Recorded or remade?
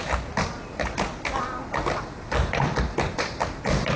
recorded